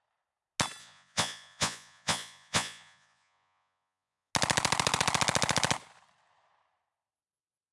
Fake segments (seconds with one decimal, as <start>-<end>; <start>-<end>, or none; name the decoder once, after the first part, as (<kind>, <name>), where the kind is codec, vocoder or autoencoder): 0.8-4.3 (vocoder, Vocos)